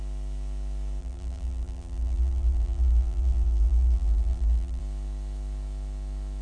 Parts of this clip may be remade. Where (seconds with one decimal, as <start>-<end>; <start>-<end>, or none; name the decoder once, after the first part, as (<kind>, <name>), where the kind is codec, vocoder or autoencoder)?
1.0-4.8 (vocoder, BigVGAN v2)